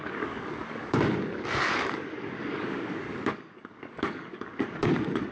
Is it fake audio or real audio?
fake